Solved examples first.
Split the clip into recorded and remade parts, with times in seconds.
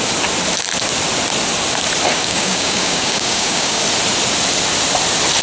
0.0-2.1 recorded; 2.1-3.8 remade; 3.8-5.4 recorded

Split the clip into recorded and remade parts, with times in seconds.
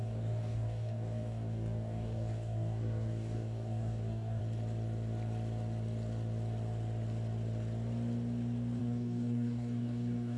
0.0-4.4 remade; 4.4-8.8 recorded; 8.8-10.4 remade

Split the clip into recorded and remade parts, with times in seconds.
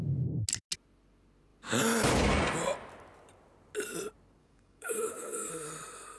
0.0-4.4 recorded; 4.4-5.5 remade; 5.5-6.2 recorded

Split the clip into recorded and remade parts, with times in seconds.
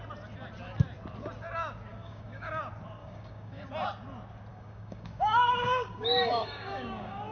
0.0-1.9 recorded; 1.9-2.6 remade; 2.6-3.0 recorded; 3.0-3.6 remade; 3.6-4.5 recorded; 4.5-7.3 remade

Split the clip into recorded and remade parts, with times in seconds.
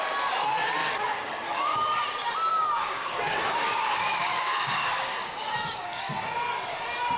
0.0-0.8 recorded; 0.8-2.0 remade; 2.0-2.5 recorded; 2.5-6.1 remade; 6.1-7.2 recorded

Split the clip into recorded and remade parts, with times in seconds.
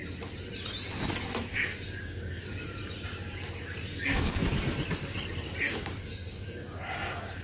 0.0-1.6 recorded; 1.6-2.5 remade; 2.5-4.0 recorded; 4.0-4.4 remade; 4.4-5.7 recorded; 5.7-7.4 remade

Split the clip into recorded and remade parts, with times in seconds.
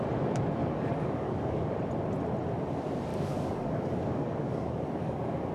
0.0-0.6 recorded; 0.6-1.8 remade; 1.8-3.1 recorded; 3.1-5.5 remade